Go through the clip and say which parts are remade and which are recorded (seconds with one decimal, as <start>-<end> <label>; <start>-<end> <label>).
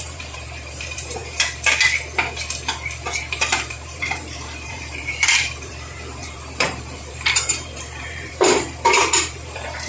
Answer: 0.0-1.2 remade; 1.2-3.4 recorded; 3.4-9.9 remade